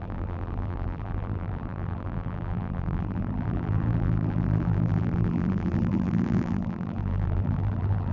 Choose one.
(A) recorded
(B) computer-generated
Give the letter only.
B